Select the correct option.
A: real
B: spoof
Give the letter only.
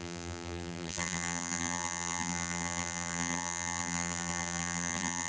B